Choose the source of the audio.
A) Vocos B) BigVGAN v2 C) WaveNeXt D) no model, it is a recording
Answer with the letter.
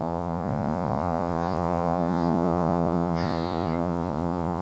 A